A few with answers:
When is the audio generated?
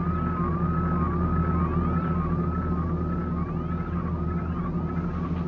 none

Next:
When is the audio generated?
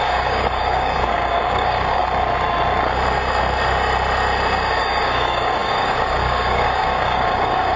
0.0-2.0; 4.8-7.8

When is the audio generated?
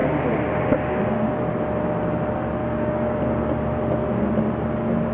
2.6-3.2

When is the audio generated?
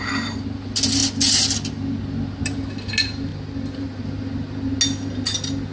none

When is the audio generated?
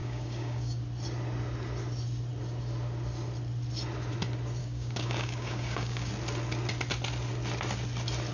0.0-0.8; 4.6-6.1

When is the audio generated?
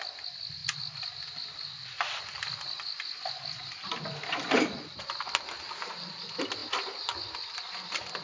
none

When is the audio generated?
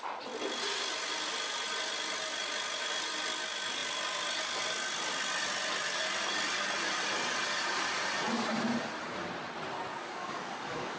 9.9-11.0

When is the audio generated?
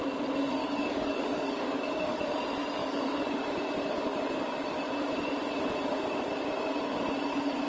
0.6-2.2; 2.8-3.4